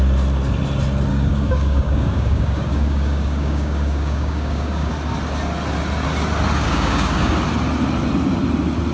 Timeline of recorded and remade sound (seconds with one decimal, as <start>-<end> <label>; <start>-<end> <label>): 0.0-1.1 recorded; 1.1-4.9 remade; 4.9-6.6 recorded; 6.6-7.3 remade; 7.3-8.9 recorded